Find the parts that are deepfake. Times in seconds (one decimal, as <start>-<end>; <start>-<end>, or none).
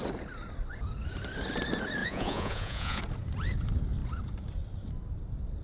2.0-3.0